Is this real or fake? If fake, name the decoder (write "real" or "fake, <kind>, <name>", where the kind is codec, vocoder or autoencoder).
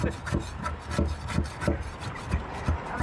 real